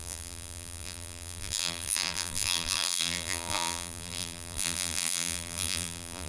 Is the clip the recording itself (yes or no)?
no